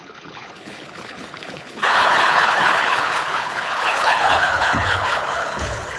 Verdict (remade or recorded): remade